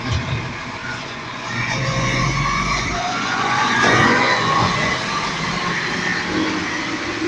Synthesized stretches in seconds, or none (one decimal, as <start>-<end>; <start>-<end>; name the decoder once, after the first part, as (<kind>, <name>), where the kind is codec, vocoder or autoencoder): 0.8-4.9 (vocoder, Vocos)